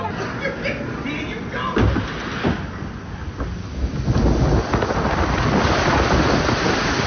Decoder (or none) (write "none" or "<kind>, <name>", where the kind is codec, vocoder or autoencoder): none